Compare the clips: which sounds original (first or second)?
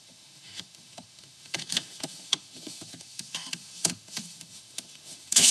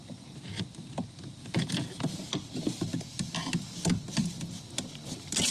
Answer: second